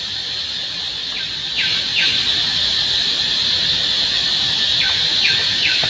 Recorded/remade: recorded